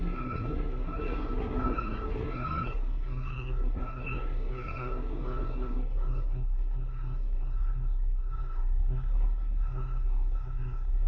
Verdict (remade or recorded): remade